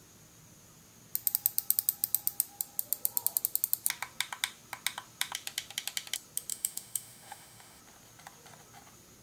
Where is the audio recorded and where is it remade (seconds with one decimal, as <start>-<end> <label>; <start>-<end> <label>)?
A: 0.0-6.5 recorded; 6.5-7.8 remade; 7.8-9.2 recorded